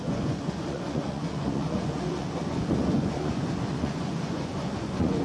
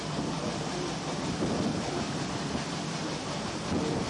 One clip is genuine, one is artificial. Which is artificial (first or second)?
first